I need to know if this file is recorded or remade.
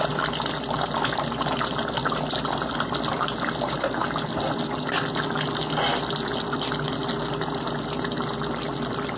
recorded